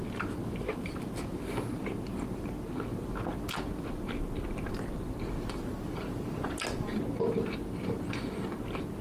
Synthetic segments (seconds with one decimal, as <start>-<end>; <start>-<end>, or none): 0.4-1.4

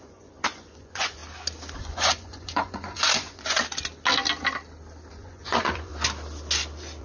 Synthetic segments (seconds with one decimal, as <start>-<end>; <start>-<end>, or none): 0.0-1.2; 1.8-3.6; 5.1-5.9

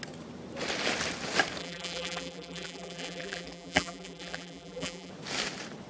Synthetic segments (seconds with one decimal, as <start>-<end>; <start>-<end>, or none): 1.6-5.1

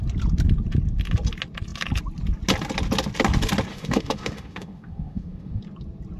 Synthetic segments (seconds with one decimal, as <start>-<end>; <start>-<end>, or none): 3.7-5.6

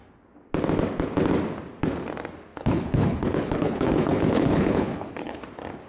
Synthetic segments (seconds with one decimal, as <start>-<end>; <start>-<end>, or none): 2.5-5.4